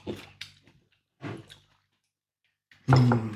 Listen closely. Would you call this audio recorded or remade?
recorded